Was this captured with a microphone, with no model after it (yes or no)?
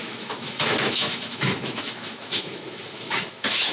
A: no